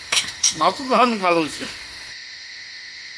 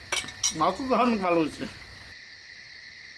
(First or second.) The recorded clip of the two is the second